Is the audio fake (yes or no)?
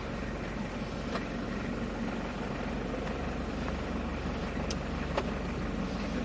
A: no